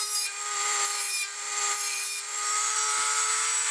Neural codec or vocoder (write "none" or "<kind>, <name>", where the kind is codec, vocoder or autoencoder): vocoder, BigVGAN v2